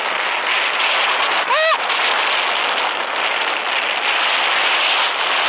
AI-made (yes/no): no